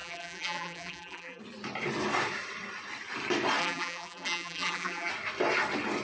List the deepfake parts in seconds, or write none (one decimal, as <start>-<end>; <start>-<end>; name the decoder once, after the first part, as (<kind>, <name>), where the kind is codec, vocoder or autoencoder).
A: 0.0-1.4 (vocoder, BigVGAN v2); 3.6-5.1